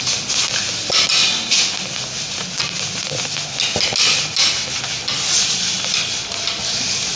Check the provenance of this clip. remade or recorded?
recorded